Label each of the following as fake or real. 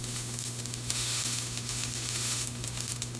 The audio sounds fake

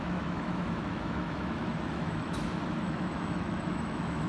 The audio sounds fake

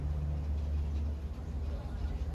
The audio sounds real